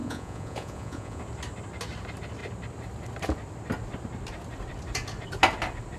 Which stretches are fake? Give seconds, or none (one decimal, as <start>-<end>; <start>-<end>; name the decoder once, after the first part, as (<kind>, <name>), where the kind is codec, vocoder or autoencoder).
0.0-1.2 (vocoder, Vocos)